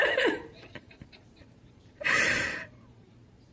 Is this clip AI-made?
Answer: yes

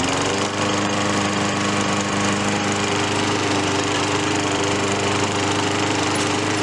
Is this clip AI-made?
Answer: yes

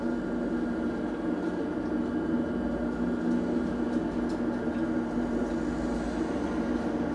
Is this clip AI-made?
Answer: no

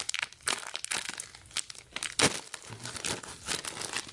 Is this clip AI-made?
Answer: no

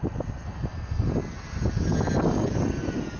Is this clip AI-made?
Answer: no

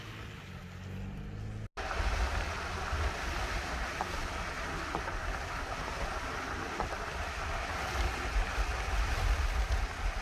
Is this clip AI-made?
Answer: no